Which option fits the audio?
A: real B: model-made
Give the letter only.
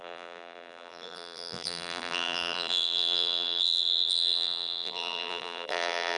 B